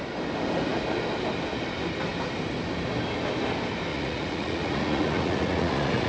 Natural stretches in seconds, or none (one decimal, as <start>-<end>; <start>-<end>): 0.0-3.9